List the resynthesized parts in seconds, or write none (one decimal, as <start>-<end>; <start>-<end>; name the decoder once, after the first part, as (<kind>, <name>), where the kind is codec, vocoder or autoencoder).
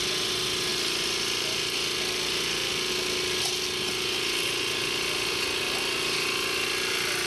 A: none